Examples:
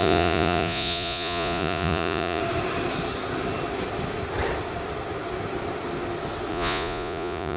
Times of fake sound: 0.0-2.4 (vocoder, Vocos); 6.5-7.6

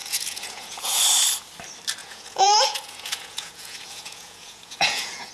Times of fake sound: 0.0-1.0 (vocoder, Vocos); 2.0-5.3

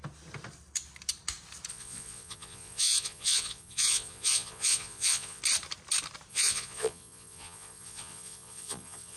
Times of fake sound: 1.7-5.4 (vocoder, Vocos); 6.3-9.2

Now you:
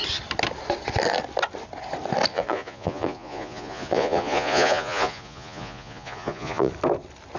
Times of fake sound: 2.3-6.7 (vocoder, Vocos)

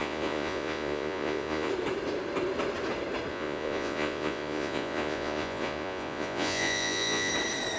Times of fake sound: 0.0-1.7 (vocoder, Vocos); 3.3-7.3

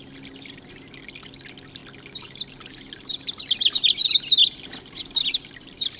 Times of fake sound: none

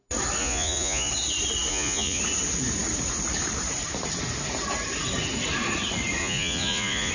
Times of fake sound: 0.4-1.1 (vocoder, Vocos); 1.7-2.2; 6.2-7.1

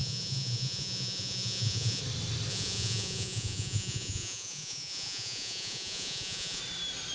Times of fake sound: 0.0-2.0 (vocoder, Vocos); 2.5-6.6